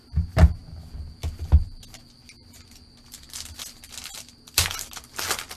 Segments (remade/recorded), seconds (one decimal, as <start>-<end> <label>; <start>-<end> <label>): 0.0-5.6 recorded